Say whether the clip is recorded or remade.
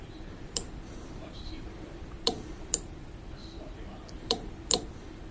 remade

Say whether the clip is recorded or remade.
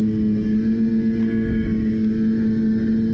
recorded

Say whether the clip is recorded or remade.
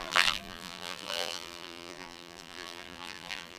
remade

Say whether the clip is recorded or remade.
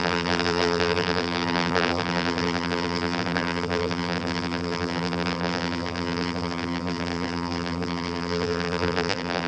remade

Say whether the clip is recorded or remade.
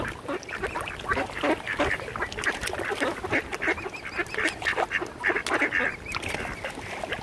recorded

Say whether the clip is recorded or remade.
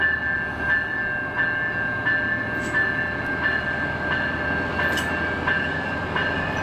recorded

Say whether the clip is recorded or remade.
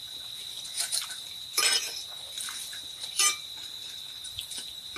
remade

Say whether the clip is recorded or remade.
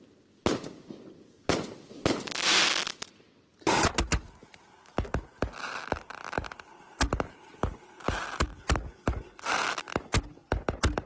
recorded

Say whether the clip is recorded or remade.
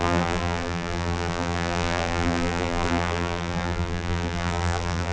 remade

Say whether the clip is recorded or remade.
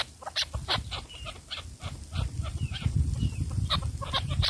remade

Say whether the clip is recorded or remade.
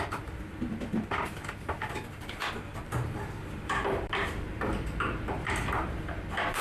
remade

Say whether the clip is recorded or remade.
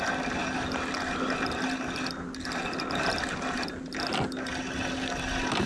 recorded